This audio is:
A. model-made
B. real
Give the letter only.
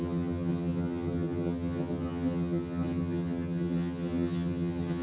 A